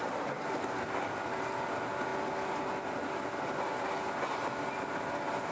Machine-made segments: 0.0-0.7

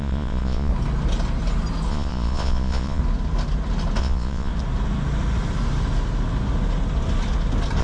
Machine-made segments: 0.0-0.7; 1.9-3.0; 4.0-4.5

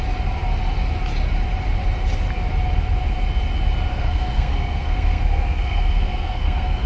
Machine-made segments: 3.9-6.9

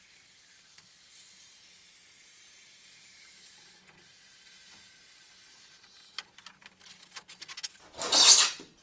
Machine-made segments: none

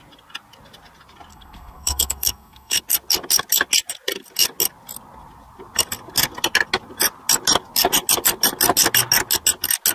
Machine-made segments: 1.3-2.8